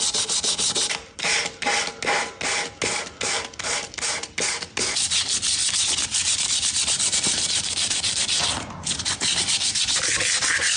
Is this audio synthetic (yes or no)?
no